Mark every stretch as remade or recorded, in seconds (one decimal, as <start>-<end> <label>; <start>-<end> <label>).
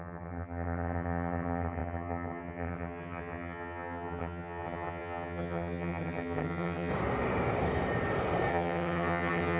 0.0-6.9 remade; 6.9-8.5 recorded; 8.5-9.6 remade